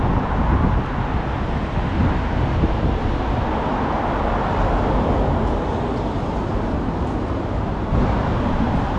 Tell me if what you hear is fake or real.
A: real